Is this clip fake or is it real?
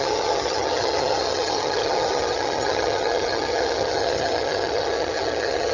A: fake